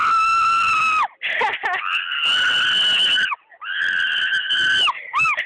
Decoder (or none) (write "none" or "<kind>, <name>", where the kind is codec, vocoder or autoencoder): none